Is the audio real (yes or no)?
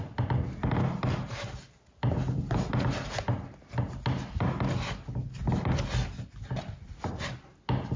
yes